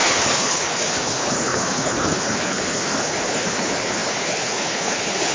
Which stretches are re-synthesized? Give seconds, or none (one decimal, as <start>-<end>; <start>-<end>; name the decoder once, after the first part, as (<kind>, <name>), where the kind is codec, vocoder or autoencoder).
0.0-5.3 (codec, HILCodec)